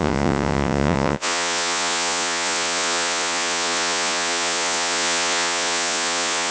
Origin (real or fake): fake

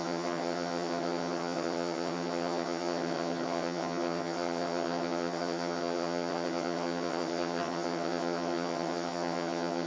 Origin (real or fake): fake